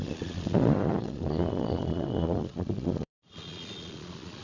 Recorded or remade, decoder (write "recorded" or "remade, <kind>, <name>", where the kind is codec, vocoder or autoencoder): remade, vocoder, Vocos